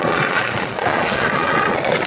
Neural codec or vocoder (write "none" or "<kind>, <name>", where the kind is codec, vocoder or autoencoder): vocoder, Vocos